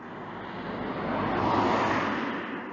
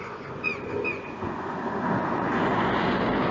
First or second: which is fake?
second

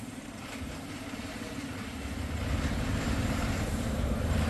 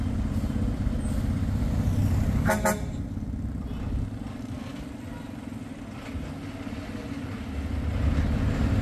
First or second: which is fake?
first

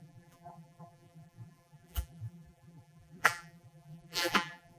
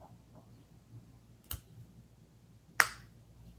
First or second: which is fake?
first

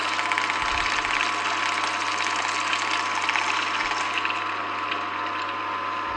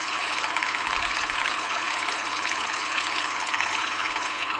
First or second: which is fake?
second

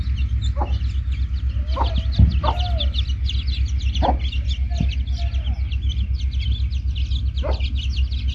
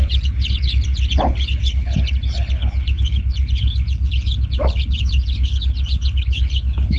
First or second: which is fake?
second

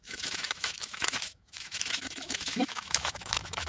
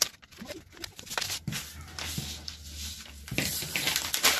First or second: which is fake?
first